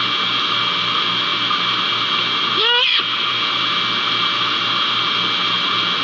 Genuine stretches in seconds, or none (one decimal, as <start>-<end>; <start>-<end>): 0.0-6.0